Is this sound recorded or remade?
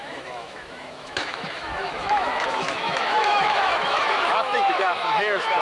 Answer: remade